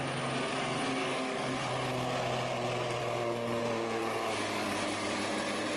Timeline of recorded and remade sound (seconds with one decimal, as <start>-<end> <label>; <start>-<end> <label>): 0.0-1.0 recorded; 1.0-1.7 remade; 1.7-3.0 recorded; 3.0-3.6 remade; 3.6-4.0 recorded; 4.0-5.2 remade; 5.2-5.8 recorded